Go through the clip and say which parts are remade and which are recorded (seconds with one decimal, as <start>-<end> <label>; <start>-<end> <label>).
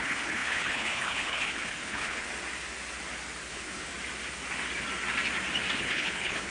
0.0-2.3 remade; 2.3-3.5 recorded; 3.5-3.9 remade; 3.9-5.8 recorded; 5.8-6.5 remade